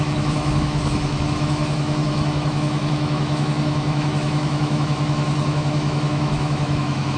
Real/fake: fake